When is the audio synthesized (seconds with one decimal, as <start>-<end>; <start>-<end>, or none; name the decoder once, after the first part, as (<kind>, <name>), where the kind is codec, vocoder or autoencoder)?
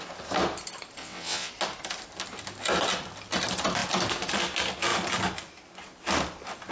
1.0-1.5 (vocoder, WaveNeXt)